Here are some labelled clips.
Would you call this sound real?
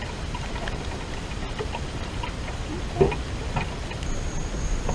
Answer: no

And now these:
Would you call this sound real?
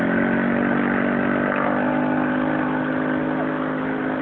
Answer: yes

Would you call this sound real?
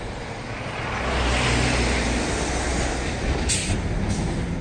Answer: yes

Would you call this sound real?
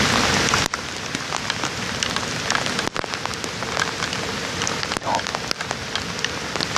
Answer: yes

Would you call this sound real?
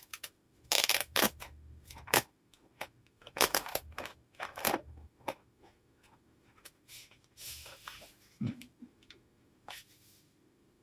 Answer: no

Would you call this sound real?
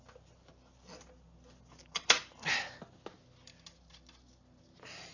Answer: yes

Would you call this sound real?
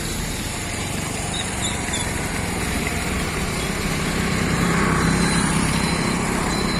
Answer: no